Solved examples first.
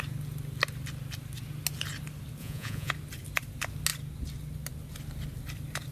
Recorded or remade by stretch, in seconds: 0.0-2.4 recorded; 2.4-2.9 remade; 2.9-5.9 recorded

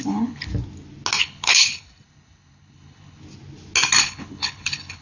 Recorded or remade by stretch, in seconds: 0.0-0.5 remade; 0.5-1.2 recorded; 1.2-3.2 remade; 3.2-4.0 recorded; 4.0-5.0 remade

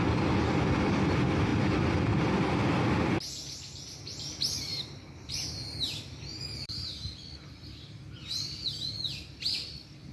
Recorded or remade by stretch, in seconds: 0.0-4.7 recorded; 4.7-6.9 remade; 6.9-10.1 recorded

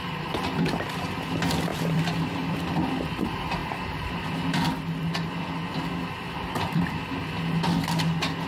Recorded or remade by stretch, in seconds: 0.0-1.7 recorded; 1.7-3.2 remade; 3.2-8.5 recorded

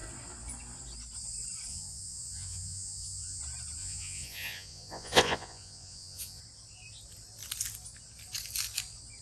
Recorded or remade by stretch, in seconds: 0.0-1.7 recorded; 1.7-3.4 remade; 3.4-3.8 recorded; 3.8-6.4 remade; 6.4-9.2 recorded